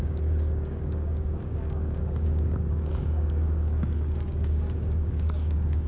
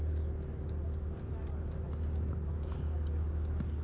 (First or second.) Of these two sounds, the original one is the second